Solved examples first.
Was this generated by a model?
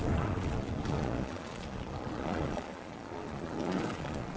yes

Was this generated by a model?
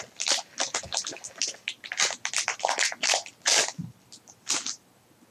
no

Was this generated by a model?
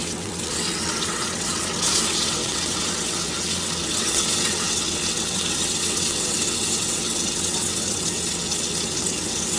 yes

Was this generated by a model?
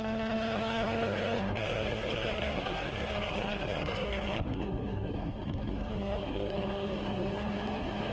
yes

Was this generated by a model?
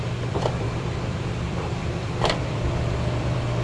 yes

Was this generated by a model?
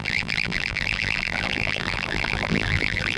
yes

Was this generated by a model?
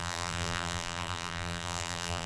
yes